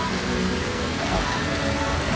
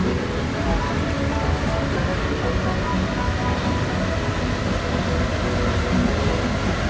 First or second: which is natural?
second